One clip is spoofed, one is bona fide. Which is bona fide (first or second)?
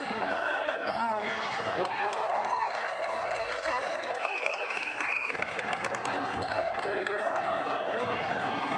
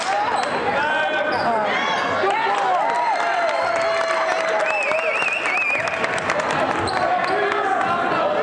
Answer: second